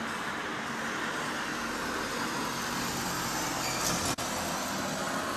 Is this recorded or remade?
recorded